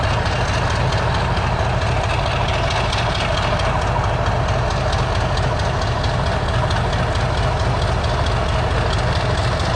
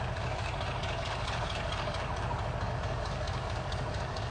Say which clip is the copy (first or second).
second